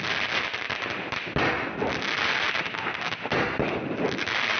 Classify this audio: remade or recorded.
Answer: recorded